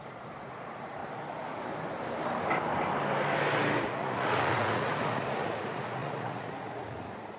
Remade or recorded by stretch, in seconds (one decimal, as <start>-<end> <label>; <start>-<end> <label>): 0.0-1.0 remade; 1.0-3.8 recorded; 3.8-7.4 remade